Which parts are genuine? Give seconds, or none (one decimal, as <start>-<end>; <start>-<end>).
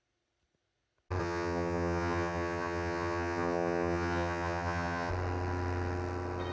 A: 0.0-1.2; 5.1-6.5